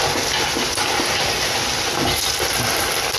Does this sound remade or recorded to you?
recorded